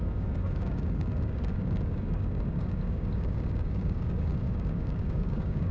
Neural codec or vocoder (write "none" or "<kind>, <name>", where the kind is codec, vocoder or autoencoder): codec, DAC